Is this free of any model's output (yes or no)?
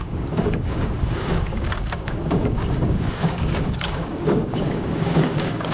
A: no